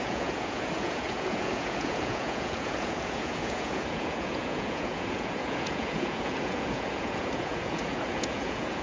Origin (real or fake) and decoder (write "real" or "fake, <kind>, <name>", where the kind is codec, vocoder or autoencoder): fake, vocoder, Vocos